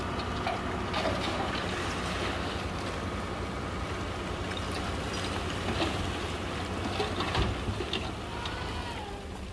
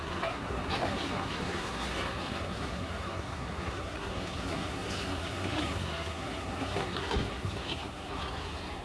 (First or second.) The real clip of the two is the first